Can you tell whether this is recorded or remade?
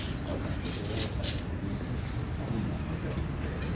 recorded